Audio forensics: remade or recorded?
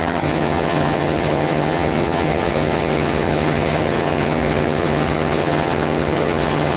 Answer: remade